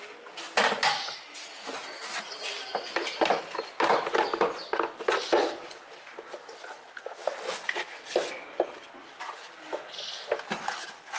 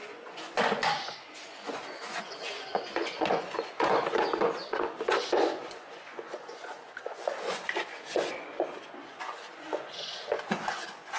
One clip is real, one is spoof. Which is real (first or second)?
first